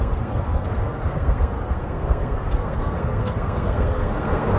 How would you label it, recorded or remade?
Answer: remade